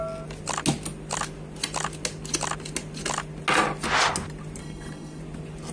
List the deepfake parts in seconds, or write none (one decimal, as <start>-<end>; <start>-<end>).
4.6-5.2

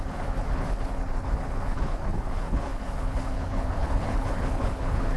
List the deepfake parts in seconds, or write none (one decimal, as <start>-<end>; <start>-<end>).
0.0-5.2

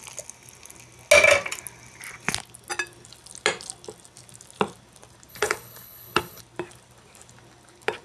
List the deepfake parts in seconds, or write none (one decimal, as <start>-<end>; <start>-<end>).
5.3-6.4

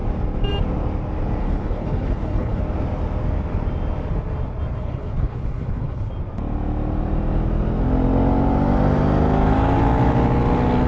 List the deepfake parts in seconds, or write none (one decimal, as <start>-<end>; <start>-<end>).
1.4-2.6; 4.8-6.1

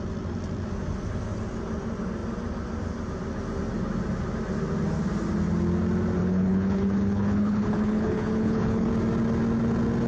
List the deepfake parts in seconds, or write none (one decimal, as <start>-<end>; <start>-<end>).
6.2-8.9

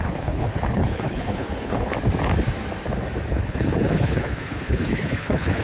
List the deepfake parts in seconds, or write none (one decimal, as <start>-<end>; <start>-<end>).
0.0-1.9; 3.3-5.6